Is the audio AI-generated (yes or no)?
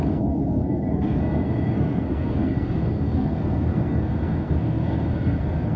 yes